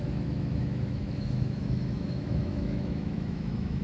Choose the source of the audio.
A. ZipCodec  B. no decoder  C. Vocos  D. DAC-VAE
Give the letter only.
D